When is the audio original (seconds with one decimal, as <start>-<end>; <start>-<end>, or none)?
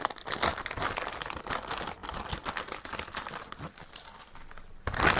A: 0.0-5.2